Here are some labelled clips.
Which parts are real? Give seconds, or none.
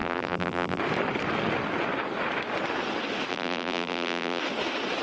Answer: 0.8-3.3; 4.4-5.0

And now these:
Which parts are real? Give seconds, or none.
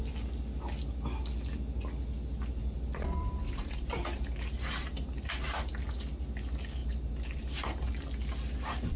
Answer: 0.0-2.6; 5.7-6.8; 7.9-9.0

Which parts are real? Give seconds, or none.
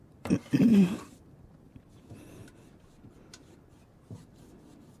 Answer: 2.2-5.0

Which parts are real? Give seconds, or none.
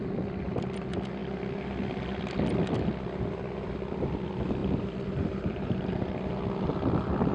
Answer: 0.0-4.6; 6.1-7.3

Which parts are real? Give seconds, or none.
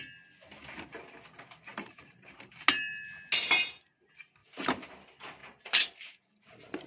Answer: 0.0-1.7; 2.5-5.4; 6.5-6.9